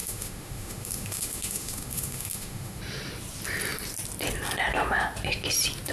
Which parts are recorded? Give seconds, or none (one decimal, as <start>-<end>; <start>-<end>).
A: 2.8-5.9